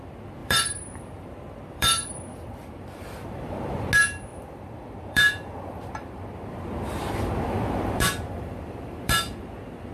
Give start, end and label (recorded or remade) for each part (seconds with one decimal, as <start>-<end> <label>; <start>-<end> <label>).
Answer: 0.0-0.4 recorded; 0.4-3.5 remade; 3.5-4.3 recorded; 4.3-9.4 remade; 9.4-9.9 recorded